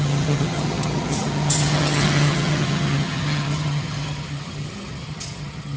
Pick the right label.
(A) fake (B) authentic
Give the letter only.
A